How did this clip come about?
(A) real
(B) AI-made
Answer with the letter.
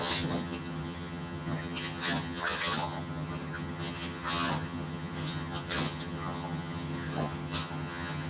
B